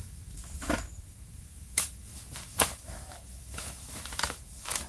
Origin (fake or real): fake